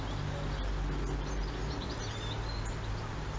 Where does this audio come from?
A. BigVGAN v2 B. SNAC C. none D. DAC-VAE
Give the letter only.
C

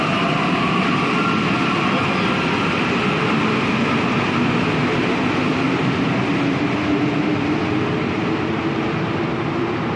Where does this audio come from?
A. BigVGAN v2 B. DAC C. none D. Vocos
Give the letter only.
C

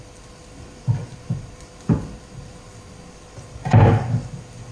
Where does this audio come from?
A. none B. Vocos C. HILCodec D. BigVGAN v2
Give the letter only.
A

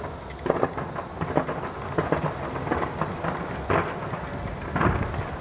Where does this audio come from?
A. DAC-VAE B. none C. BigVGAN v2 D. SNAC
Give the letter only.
B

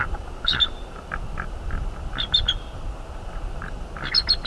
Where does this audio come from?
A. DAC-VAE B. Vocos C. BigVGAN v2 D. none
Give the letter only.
D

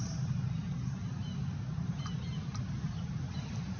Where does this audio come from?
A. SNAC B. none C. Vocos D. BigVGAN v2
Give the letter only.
D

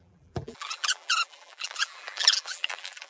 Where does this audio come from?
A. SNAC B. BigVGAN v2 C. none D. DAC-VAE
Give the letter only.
B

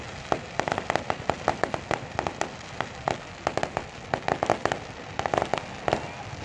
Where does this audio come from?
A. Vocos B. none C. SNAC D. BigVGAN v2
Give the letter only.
B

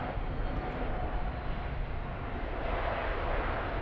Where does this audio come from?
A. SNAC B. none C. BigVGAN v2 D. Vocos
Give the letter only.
B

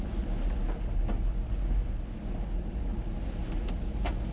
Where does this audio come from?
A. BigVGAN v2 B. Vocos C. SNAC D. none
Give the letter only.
D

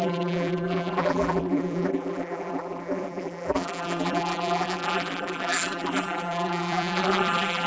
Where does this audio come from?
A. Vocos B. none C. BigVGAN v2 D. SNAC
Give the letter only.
C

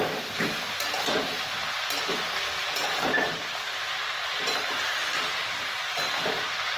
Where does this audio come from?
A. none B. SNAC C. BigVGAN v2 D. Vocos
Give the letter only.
C